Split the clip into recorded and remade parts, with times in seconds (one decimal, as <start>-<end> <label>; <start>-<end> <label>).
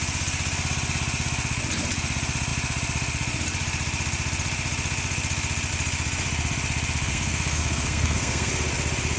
0.0-7.0 recorded; 7.0-8.5 remade; 8.5-9.2 recorded